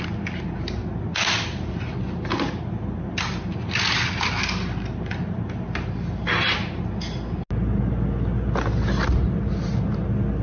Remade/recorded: recorded